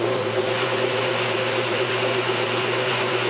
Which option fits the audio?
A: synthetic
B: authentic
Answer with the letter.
A